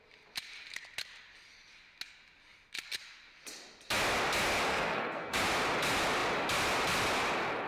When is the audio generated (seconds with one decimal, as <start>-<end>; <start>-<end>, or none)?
4.7-5.4